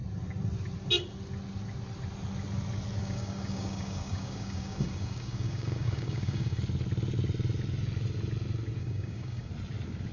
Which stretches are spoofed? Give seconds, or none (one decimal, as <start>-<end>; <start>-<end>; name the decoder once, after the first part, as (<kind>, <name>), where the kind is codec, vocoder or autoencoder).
3.0-6.6 (codec, DAC); 8.8-9.5